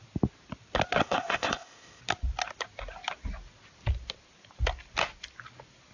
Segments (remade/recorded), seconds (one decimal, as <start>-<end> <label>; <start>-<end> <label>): 0.0-1.0 recorded; 1.0-2.0 remade; 2.0-5.9 recorded